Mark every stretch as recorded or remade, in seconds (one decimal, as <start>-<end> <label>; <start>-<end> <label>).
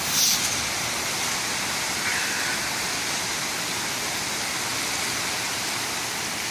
0.0-6.5 recorded